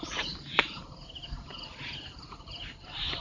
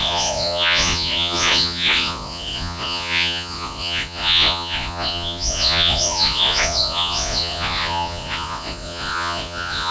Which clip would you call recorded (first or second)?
first